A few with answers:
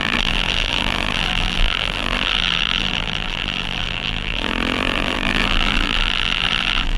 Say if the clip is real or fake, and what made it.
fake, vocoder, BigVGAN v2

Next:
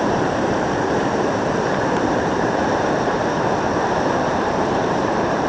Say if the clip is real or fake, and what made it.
fake, vocoder, BigVGAN v2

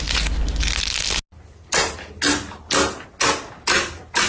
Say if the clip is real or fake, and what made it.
real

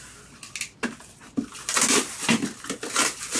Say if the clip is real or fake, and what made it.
real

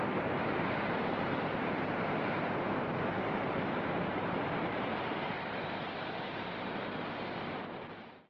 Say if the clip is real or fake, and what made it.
fake, vocoder, BigVGAN v2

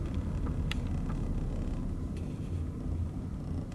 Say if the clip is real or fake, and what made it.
real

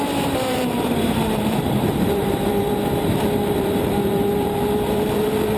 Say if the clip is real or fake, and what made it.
fake, vocoder, BigVGAN v2